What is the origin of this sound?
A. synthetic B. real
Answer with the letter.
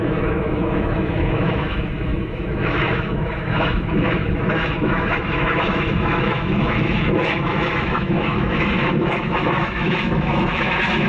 A